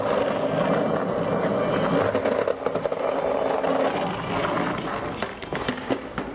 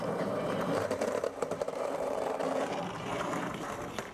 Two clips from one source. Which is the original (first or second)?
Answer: first